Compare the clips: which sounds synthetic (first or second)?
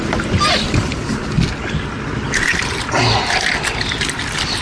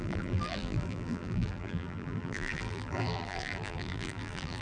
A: second